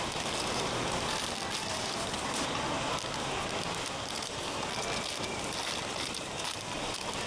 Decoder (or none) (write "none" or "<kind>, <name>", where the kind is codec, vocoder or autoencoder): none